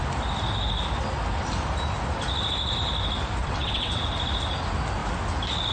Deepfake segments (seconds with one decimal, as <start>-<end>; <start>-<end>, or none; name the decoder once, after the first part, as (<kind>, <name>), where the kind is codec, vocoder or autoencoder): 3.4-4.0 (vocoder, WaveNeXt)